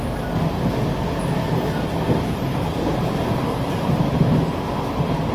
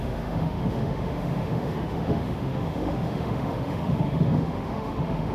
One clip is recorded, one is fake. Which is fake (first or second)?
second